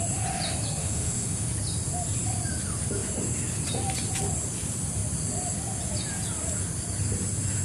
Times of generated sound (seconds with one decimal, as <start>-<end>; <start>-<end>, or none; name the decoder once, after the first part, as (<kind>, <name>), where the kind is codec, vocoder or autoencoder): 0.8-1.5 (autoencoder, DAC-VAE)